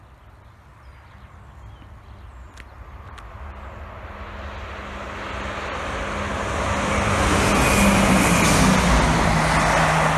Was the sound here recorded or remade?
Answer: recorded